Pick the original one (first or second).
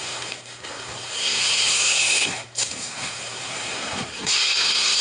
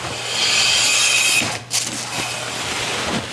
second